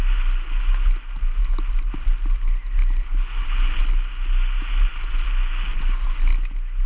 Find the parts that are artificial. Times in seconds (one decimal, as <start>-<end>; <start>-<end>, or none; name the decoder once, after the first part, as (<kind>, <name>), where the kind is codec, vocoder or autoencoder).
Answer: 0.0-0.6 (vocoder, BigVGAN v2)

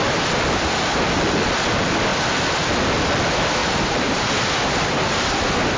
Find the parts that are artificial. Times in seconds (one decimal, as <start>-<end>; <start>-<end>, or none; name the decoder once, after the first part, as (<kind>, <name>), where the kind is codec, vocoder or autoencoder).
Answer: 3.6-4.3 (vocoder, BigVGAN v2)

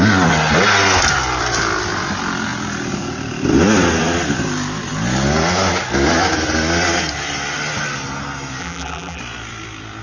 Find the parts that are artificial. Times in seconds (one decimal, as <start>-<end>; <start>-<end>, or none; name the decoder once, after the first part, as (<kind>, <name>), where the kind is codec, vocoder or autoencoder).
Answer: 8.6-9.2 (vocoder, BigVGAN v2)

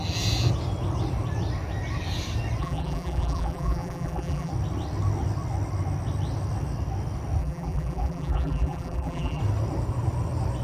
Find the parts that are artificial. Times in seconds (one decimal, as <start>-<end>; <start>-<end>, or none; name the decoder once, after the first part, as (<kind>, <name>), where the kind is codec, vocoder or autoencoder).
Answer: 2.6-4.5 (vocoder, BigVGAN v2); 7.4-9.4

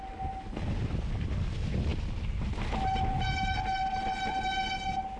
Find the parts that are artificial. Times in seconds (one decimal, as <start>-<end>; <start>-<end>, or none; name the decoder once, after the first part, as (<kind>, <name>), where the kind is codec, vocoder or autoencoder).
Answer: none